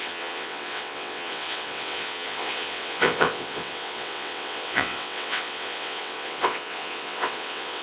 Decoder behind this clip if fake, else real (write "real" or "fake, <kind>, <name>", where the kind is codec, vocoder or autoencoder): fake, vocoder, WaveNeXt